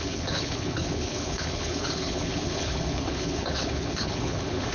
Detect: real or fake fake